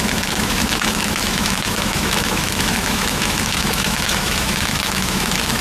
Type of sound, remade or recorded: remade